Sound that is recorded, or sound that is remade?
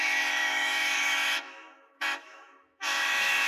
remade